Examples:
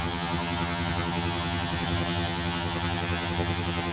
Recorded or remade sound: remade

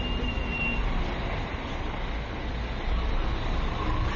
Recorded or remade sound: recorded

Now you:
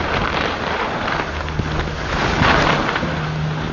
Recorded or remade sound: recorded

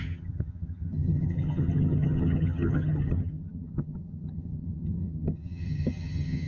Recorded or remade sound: remade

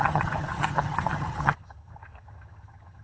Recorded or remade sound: remade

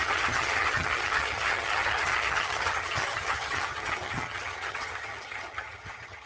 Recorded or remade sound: remade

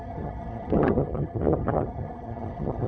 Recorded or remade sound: remade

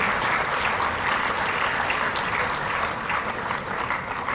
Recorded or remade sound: recorded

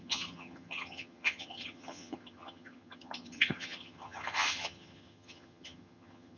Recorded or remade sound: remade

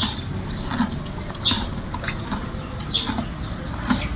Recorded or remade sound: recorded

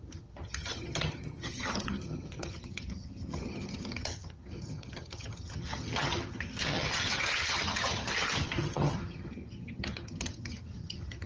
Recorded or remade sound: remade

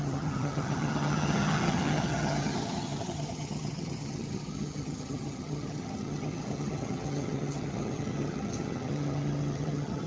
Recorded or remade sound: remade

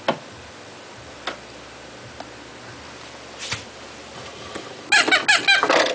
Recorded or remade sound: recorded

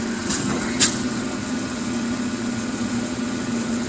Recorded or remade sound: remade